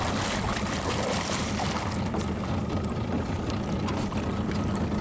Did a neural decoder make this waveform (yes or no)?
no